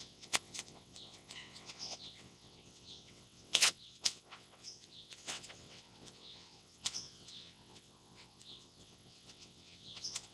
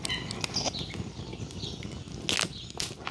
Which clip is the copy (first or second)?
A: first